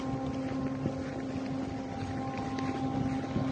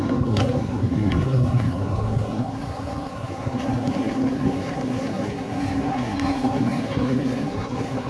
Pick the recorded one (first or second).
first